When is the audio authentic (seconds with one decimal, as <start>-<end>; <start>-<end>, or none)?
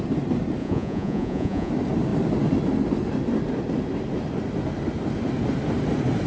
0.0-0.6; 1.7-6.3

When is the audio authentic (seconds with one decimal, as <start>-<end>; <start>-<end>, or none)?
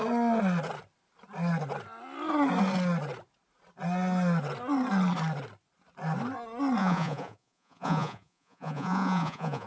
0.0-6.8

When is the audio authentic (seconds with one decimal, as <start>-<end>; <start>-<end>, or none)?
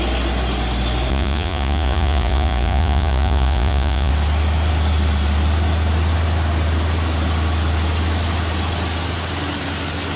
0.0-1.1; 4.1-10.2